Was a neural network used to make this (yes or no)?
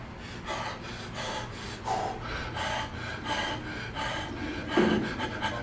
no